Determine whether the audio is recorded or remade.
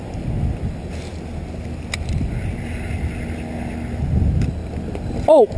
recorded